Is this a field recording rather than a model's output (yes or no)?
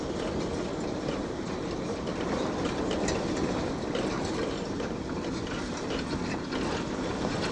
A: yes